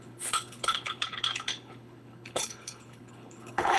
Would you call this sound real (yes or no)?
no